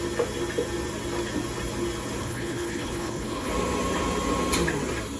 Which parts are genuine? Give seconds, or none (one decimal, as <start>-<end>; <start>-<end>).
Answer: 0.0-2.2; 3.5-5.2